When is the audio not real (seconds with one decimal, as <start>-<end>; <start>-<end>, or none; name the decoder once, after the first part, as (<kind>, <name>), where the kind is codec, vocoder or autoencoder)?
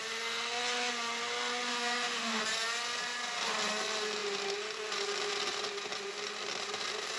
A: 1.7-2.4 (autoencoder, DAC-VAE)